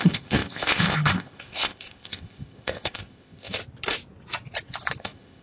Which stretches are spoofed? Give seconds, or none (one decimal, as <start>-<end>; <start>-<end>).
0.0-3.6; 5.0-5.4